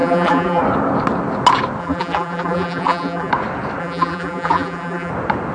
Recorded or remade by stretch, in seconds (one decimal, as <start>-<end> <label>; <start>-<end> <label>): 0.0-0.6 remade; 0.6-1.8 recorded; 1.8-3.3 remade; 3.3-3.8 recorded; 3.8-5.1 remade; 5.1-5.5 recorded